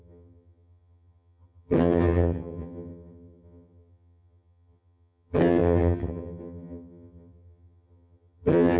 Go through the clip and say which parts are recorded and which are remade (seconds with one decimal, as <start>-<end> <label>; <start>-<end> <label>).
0.0-8.8 remade